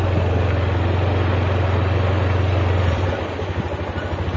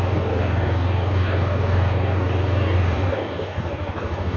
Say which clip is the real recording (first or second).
first